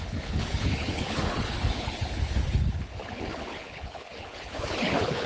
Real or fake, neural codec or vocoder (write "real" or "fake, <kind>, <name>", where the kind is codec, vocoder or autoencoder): fake, codec, HILCodec